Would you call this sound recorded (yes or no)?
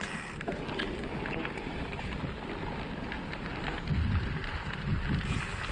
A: yes